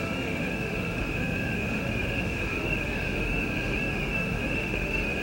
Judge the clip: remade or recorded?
remade